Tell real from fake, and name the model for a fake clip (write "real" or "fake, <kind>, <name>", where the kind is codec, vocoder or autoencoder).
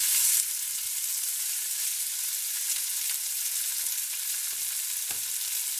real